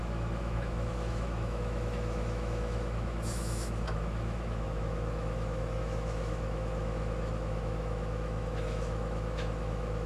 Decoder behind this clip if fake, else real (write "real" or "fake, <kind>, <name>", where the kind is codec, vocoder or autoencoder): fake, autoencoder, DAC-VAE